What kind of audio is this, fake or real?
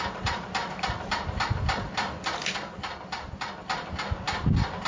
real